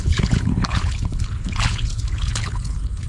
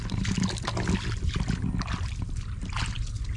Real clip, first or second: second